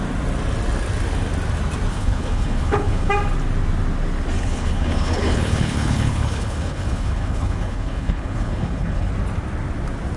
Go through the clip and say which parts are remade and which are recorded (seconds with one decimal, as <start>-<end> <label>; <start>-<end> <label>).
0.0-1.9 recorded; 1.9-3.1 remade; 3.1-4.4 recorded; 4.4-9.1 remade; 9.1-10.2 recorded